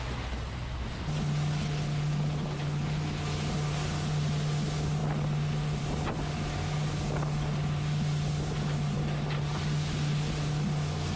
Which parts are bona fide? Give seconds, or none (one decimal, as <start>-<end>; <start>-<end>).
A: 0.0-11.2